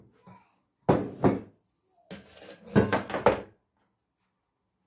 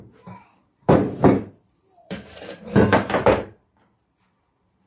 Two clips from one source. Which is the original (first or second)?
first